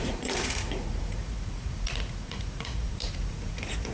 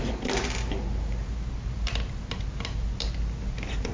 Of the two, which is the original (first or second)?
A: second